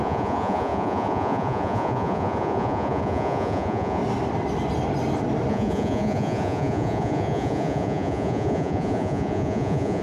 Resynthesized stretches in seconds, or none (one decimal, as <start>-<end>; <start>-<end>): 0.0-4.0; 5.5-10.0